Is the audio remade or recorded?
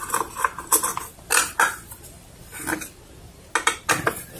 recorded